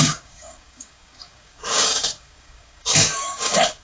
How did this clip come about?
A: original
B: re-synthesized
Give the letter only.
B